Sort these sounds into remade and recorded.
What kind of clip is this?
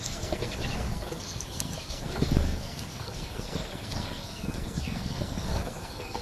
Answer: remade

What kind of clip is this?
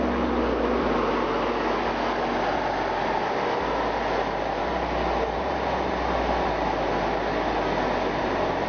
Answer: recorded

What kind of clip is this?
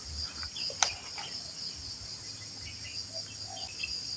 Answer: recorded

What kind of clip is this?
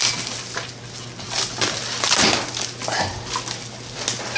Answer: recorded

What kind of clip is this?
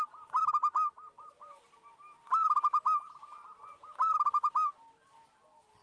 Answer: recorded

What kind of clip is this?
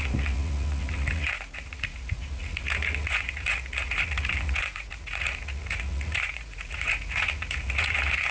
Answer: remade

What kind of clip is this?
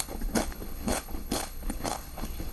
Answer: remade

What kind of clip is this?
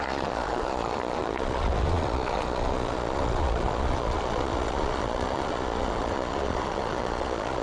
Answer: remade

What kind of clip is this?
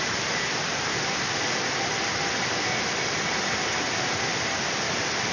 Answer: recorded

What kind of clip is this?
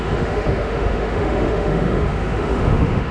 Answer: remade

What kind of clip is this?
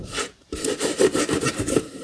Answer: remade